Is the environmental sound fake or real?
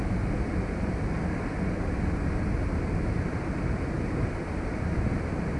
real